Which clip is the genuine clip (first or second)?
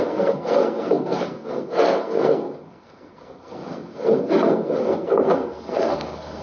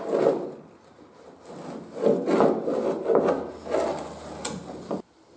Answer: second